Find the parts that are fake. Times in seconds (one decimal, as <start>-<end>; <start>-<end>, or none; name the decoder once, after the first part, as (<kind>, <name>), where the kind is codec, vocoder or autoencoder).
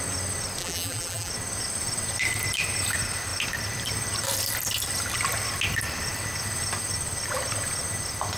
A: 0.6-1.3 (vocoder, BigVGAN v2)